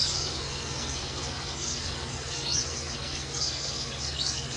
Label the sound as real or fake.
fake